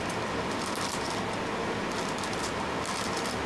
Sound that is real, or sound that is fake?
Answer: real